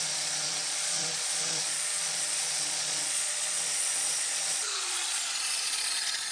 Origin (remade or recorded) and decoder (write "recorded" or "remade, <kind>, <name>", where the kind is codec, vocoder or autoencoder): remade, vocoder, Vocos